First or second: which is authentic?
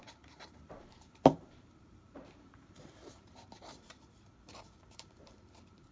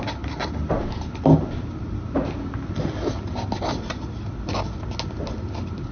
second